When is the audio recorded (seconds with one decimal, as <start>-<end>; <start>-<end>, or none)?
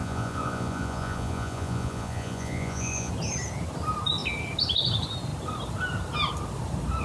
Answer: 3.1-7.0